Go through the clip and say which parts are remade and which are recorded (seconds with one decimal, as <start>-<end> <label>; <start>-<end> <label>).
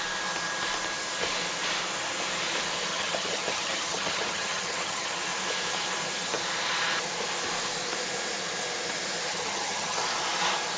0.0-2.9 recorded; 2.9-5.2 remade; 5.2-9.3 recorded; 9.3-10.0 remade; 10.0-10.8 recorded